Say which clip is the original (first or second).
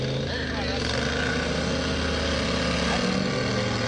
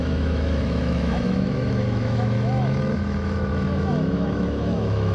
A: first